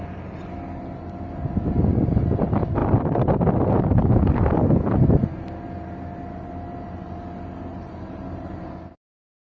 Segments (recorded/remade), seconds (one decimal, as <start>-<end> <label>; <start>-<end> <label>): 0.0-7.7 recorded; 7.7-8.7 remade; 8.7-9.5 recorded